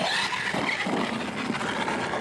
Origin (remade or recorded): recorded